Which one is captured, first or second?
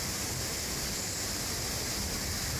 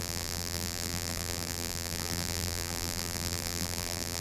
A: first